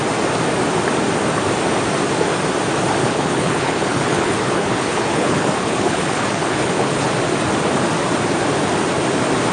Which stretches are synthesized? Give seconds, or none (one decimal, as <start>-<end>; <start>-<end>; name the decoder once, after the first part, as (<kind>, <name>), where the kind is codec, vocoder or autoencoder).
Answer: 3.0-7.1 (codec, HILCodec)